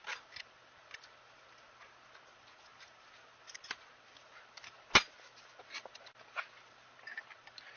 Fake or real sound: real